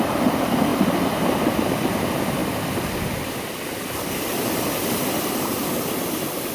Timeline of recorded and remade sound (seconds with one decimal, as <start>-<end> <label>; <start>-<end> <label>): 0.0-6.5 recorded